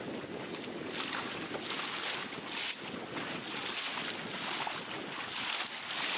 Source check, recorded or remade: recorded